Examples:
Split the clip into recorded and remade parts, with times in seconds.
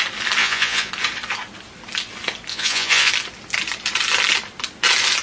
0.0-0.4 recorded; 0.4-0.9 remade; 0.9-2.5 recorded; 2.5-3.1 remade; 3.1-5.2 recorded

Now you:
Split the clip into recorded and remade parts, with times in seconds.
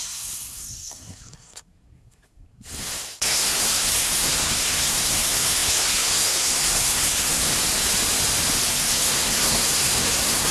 0.0-7.5 remade; 7.5-8.7 recorded; 8.7-10.5 remade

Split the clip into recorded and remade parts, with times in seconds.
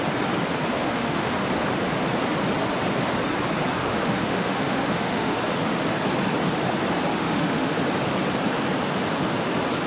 0.0-0.7 recorded; 0.7-1.3 remade; 1.3-3.8 recorded; 3.8-5.4 remade; 5.4-7.1 recorded; 7.1-7.7 remade; 7.7-9.9 recorded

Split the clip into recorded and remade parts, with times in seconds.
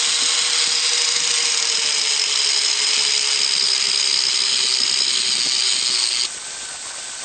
0.0-7.2 recorded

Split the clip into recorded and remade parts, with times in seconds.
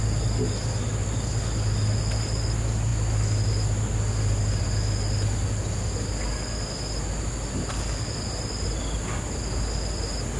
0.0-10.4 recorded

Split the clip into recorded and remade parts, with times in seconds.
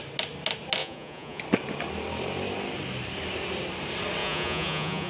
0.0-0.8 recorded; 0.8-1.4 remade; 1.4-4.2 recorded; 4.2-5.1 remade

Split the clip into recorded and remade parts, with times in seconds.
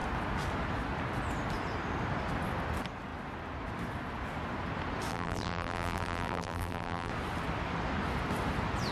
0.0-5.1 recorded; 5.1-7.1 remade; 7.1-8.9 recorded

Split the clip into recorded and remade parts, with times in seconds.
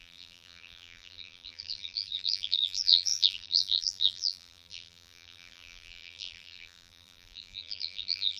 0.0-8.4 remade